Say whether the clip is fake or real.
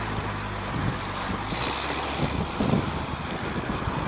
real